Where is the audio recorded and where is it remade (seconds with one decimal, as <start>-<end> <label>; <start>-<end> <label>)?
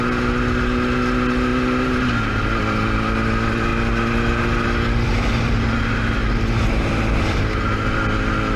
0.0-8.6 recorded